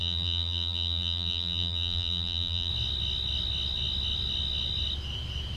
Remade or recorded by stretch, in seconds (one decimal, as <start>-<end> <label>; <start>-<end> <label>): 0.0-2.7 remade; 2.7-5.6 recorded